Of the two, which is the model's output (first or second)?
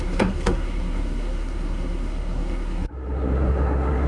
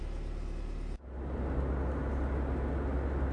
first